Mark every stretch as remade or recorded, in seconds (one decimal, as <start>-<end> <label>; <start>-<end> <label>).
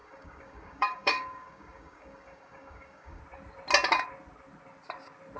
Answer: 0.0-3.2 remade; 3.2-5.4 recorded